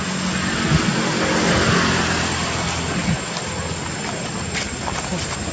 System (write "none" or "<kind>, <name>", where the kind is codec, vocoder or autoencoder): none